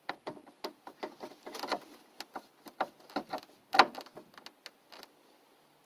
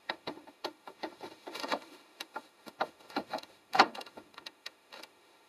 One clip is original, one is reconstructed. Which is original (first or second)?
first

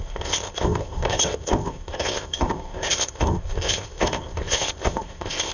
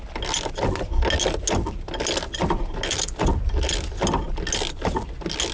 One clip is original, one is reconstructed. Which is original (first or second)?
second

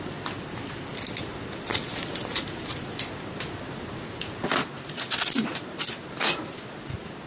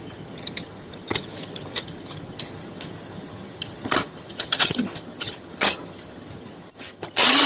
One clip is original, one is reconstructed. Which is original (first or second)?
first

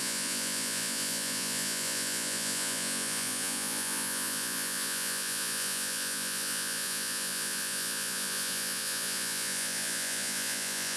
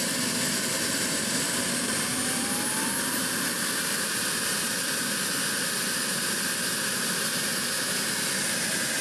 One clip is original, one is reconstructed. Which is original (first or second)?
second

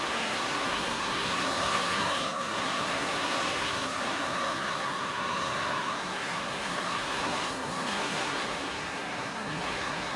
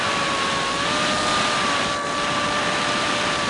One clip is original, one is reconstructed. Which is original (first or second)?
second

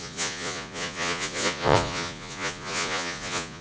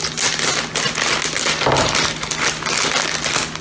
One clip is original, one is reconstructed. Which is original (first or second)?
second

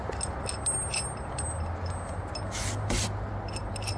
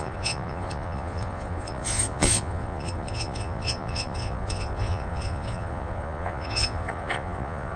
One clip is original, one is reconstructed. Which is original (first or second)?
first